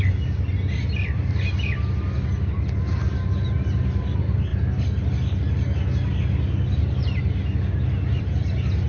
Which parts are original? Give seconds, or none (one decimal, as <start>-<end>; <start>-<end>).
0.0-8.9